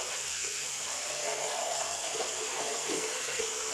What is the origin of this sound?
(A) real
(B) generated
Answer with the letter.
B